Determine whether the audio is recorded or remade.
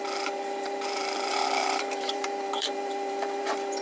remade